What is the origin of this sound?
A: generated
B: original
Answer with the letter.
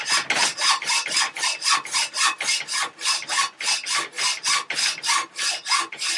B